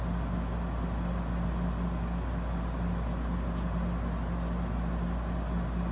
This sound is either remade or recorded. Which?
recorded